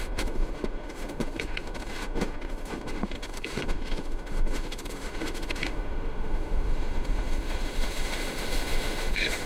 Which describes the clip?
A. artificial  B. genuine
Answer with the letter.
A